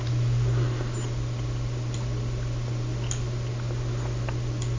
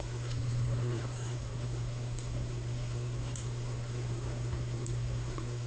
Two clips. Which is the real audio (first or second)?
first